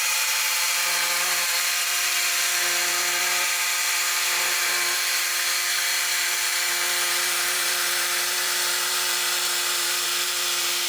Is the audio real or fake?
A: fake